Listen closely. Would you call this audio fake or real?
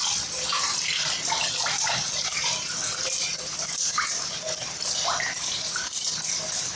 real